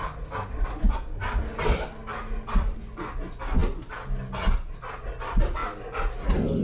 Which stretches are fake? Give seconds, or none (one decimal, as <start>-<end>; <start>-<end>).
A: none